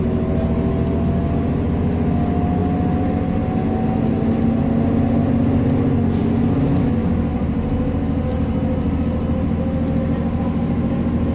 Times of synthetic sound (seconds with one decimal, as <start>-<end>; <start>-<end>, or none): none